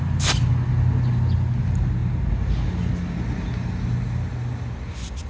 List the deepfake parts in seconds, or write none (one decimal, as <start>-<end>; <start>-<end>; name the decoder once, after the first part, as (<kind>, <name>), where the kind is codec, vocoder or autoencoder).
none